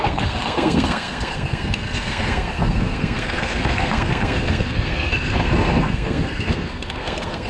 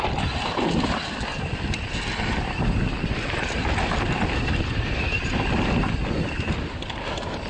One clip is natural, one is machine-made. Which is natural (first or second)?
second